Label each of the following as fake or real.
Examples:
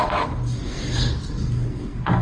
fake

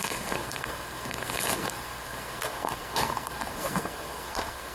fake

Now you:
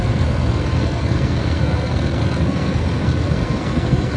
fake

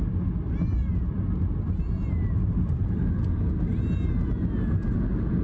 real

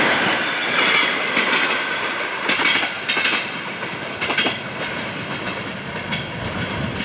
real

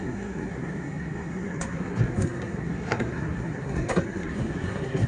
fake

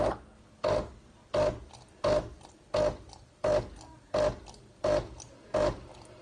real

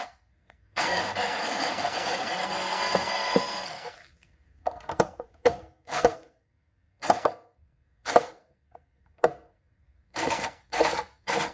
fake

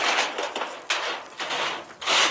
real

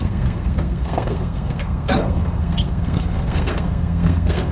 fake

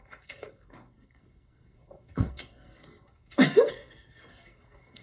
fake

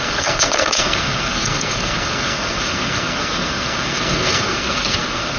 fake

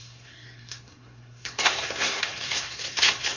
fake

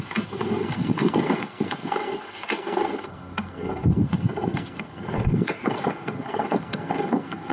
fake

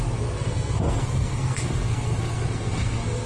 fake